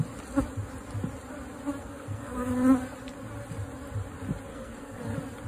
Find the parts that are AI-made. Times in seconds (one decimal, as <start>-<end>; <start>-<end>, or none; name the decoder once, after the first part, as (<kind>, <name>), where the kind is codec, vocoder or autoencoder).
1.8-2.5 (codec, SNAC); 4.5-5.0